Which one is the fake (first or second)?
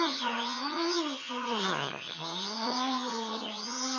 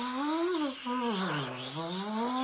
first